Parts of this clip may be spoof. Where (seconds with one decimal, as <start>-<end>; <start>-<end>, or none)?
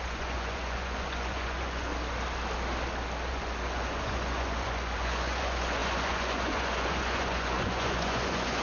0.0-1.9; 3.3-8.6